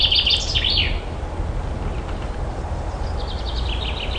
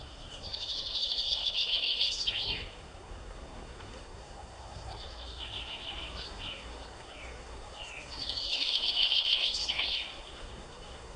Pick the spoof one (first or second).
second